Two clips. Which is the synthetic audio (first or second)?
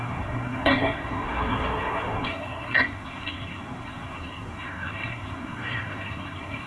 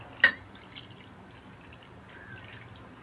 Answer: first